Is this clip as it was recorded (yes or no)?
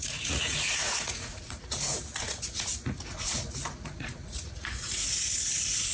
no